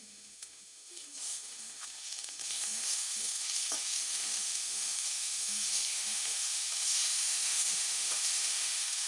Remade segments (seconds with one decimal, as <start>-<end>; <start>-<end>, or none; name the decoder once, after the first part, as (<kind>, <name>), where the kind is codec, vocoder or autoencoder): 0.0-9.1 (autoencoder, DAC-VAE)